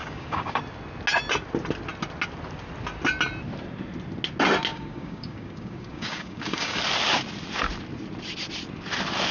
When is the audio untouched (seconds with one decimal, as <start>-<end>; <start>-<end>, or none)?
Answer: 0.6-4.7; 6.8-9.3